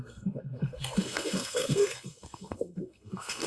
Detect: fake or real fake